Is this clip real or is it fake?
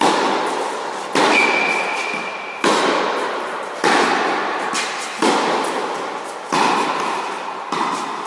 real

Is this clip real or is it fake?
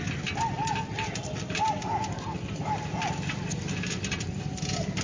real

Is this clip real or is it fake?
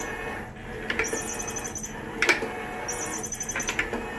real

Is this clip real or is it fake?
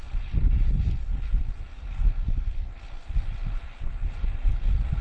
real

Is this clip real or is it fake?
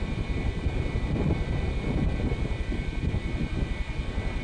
real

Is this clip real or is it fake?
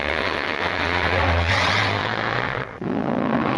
fake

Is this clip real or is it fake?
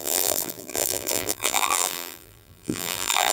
fake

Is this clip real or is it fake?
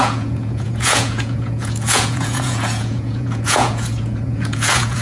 fake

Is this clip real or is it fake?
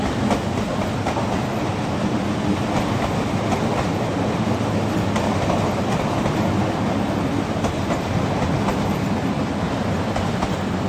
real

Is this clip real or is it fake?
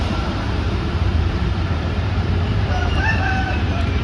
fake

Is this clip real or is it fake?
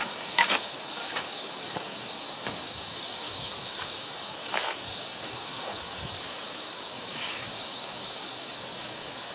fake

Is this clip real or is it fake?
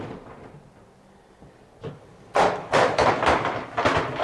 real